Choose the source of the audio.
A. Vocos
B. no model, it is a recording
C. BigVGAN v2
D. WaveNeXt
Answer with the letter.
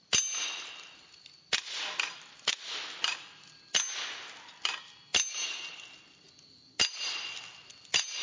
B